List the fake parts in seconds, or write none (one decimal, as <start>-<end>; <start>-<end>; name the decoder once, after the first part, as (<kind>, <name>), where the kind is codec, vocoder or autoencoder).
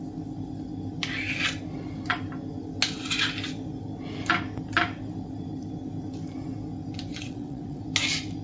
7.1-7.8 (vocoder, WaveNeXt)